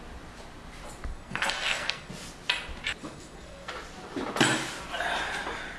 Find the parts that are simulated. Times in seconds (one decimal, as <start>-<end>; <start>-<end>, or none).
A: 1.1-2.1; 3.0-3.7